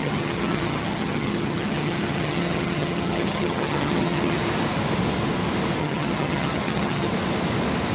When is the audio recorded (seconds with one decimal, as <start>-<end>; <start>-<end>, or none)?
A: 4.4-5.8; 7.1-7.9